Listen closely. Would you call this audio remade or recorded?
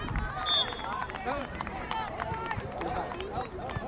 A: remade